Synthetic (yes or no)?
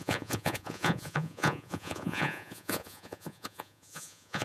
yes